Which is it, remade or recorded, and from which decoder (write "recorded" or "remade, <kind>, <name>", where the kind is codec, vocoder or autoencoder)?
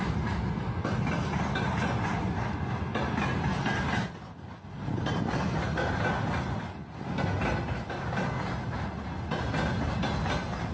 recorded